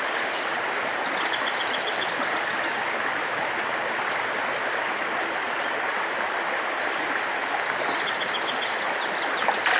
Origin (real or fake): real